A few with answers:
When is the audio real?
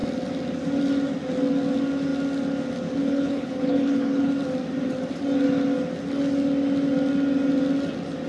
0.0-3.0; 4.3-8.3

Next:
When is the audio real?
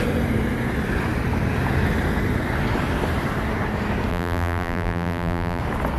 0.0-4.1; 5.6-6.0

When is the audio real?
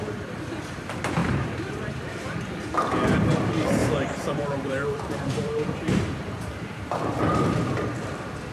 0.0-1.2; 1.9-3.8; 7.0-8.5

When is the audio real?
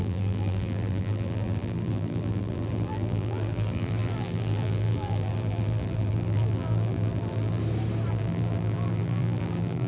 7.6-8.1